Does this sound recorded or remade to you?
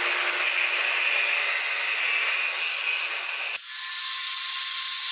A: recorded